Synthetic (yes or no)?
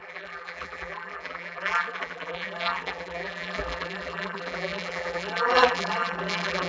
yes